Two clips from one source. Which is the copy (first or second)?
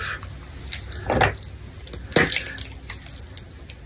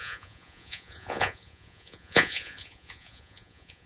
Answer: second